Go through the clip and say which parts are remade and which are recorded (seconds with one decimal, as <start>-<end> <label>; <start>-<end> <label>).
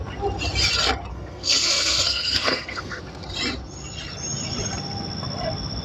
0.0-1.1 recorded; 1.1-3.0 remade; 3.0-5.8 recorded